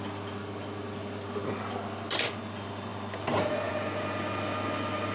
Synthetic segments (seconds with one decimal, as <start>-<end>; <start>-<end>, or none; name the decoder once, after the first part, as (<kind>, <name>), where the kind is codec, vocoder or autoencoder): none